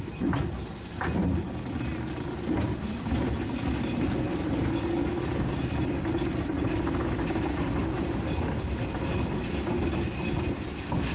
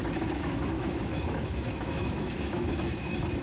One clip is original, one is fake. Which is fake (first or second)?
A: second